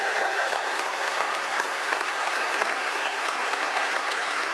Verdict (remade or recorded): remade